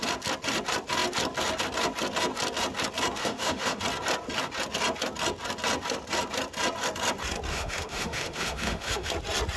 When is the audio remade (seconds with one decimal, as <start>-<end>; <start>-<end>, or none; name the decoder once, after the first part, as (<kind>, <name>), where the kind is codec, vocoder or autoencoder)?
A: 3.2-3.8 (autoencoder, DAC-VAE); 7.5-9.1